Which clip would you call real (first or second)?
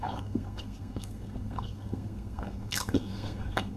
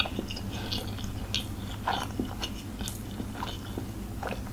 second